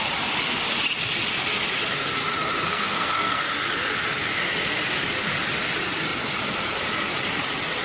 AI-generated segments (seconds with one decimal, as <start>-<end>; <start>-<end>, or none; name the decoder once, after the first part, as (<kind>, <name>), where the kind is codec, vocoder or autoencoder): 2.7-3.5 (codec, SNAC)